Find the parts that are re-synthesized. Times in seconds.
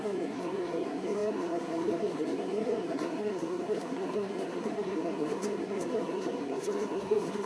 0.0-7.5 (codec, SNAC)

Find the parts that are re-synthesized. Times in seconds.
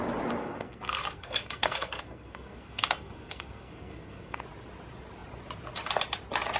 0.4-4.4 (codec, SNAC)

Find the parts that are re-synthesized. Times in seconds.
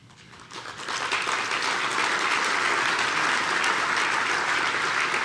0.0-0.8 (codec, DAC)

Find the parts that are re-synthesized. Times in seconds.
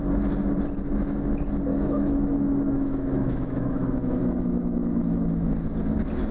1.7-5.5 (autoencoder, DAC-VAE)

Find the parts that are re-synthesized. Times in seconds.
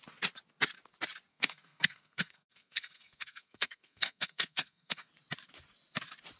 1.3-5.1 (codec, SNAC)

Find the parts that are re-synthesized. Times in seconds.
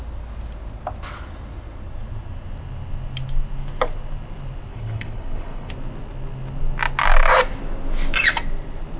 4.7-5.7 (codec, HILCodec)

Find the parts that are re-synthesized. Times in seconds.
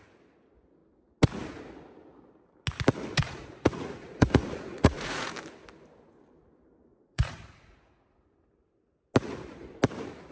3.2-5.3 (vocoder, Vocos); 6.9-8.3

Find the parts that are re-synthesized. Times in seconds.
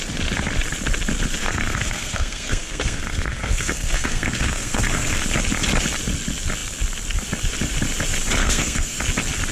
1.4-5.2 (codec, SNAC); 8.4-9.0